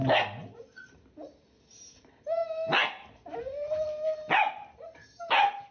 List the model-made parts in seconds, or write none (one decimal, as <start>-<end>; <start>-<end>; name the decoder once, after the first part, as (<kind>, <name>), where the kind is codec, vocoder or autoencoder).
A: none